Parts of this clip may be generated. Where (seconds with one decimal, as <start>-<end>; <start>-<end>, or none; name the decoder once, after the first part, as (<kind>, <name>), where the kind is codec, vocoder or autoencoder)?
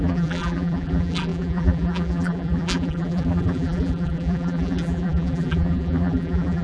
0.0-6.6 (vocoder, BigVGAN v2)